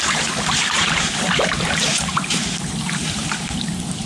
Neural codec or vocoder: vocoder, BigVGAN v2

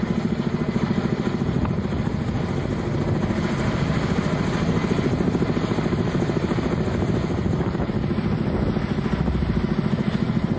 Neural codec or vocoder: none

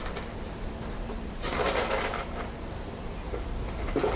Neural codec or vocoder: vocoder, BigVGAN v2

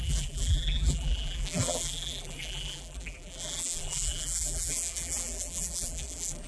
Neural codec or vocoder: vocoder, BigVGAN v2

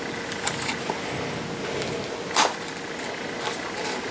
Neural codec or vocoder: none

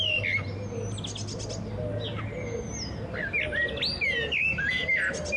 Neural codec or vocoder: none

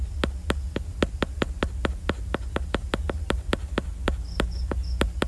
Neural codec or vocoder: none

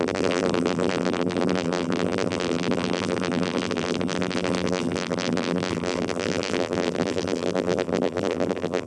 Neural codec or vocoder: vocoder, BigVGAN v2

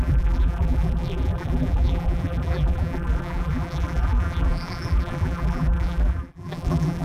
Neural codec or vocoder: vocoder, BigVGAN v2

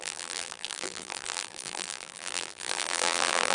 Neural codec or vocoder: vocoder, BigVGAN v2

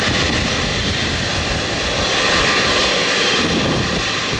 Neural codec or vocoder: vocoder, BigVGAN v2